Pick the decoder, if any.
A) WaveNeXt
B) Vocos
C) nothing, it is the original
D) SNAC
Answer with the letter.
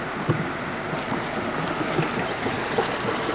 C